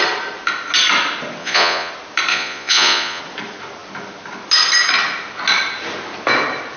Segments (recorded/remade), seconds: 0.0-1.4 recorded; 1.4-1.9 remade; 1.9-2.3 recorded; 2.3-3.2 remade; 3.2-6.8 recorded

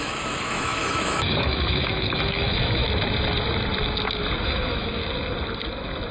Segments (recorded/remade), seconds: 0.0-2.8 remade; 2.8-4.4 recorded; 4.4-5.0 remade; 5.0-6.1 recorded

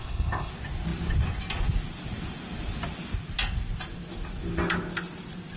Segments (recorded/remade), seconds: 0.0-0.5 remade; 0.5-5.6 recorded

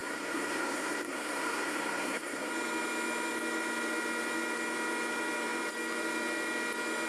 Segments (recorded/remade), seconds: 0.0-2.5 remade; 2.5-7.1 recorded

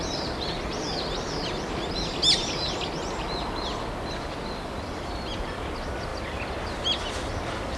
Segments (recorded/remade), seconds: 0.0-7.8 recorded

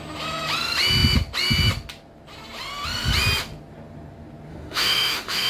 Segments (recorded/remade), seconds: 0.0-4.5 recorded; 4.5-5.5 remade